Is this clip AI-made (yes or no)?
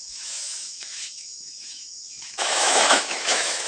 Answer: yes